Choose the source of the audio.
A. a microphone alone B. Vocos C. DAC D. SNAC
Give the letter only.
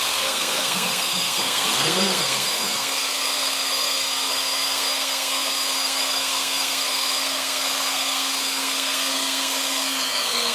D